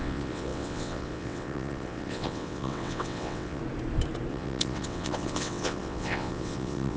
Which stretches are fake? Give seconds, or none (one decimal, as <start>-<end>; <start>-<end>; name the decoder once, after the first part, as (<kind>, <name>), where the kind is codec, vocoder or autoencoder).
0.0-3.6 (vocoder, WaveNeXt); 4.3-7.0